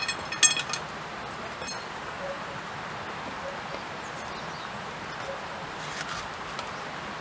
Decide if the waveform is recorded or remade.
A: recorded